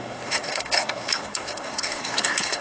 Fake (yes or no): yes